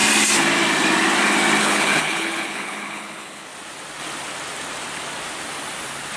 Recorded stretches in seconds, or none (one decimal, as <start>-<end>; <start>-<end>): 0.0-1.6; 3.5-6.2